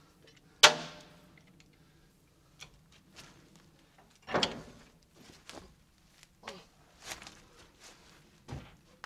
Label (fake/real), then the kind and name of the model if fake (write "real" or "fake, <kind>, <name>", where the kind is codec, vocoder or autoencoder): real